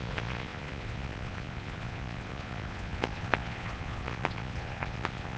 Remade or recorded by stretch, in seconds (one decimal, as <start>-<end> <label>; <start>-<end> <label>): 0.0-5.4 remade